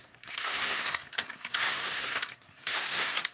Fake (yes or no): yes